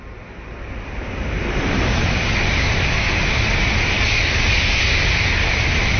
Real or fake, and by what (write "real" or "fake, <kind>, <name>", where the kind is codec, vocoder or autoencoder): real